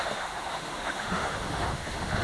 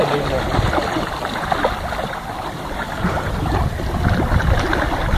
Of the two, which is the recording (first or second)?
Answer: second